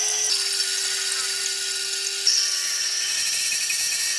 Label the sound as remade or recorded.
recorded